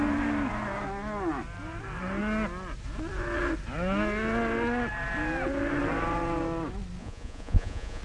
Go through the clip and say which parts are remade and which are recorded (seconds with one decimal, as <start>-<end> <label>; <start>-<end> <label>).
0.0-7.0 recorded; 7.0-8.0 remade